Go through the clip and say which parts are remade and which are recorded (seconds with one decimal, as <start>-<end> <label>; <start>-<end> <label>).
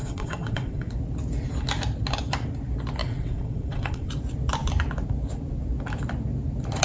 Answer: 0.0-0.9 remade; 0.9-3.0 recorded; 3.0-4.1 remade; 4.1-6.8 recorded